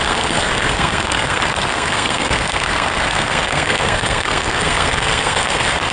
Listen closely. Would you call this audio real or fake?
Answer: fake